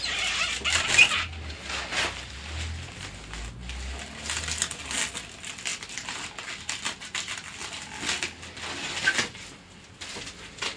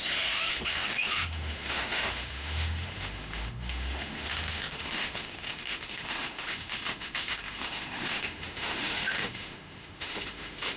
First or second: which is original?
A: first